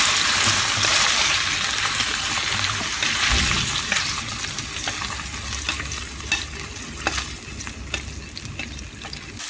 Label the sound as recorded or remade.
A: recorded